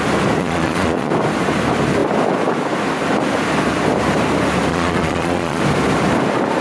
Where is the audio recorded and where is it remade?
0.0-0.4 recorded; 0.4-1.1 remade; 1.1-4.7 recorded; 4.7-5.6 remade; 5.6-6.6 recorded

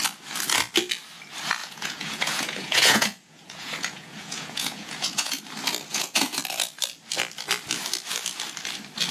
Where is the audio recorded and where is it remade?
0.0-1.6 recorded; 1.6-5.4 remade; 5.4-5.9 recorded; 5.9-6.4 remade; 6.4-9.1 recorded

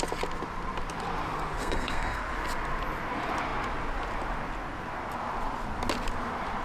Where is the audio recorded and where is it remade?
0.0-1.6 recorded; 1.6-2.2 remade; 2.2-6.6 recorded